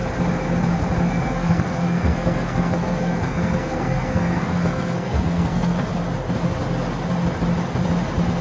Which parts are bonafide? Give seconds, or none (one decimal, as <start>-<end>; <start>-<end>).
0.0-1.1; 5.9-8.4